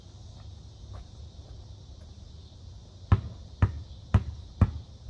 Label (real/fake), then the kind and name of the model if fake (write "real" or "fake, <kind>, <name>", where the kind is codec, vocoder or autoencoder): real